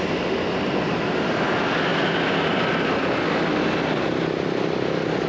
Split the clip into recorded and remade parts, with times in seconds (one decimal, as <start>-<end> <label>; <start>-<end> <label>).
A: 0.0-5.3 recorded